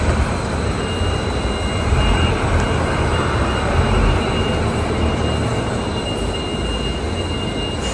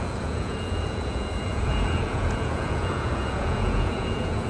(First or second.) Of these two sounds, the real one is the first